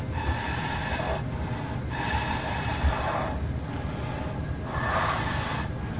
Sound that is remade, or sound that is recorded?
recorded